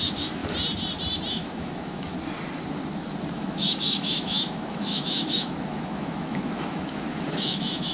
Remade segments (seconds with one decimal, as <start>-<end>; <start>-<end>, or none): 0.0-0.4; 1.3-2.1; 3.3-7.9